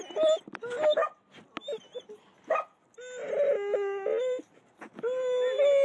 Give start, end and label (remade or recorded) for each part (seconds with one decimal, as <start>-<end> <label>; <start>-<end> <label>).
0.0-5.8 recorded